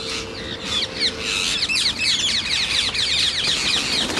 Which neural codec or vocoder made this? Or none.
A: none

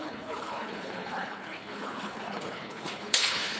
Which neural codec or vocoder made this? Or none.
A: codec, HILCodec